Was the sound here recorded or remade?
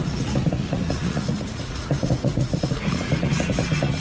remade